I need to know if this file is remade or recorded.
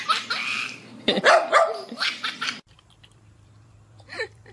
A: remade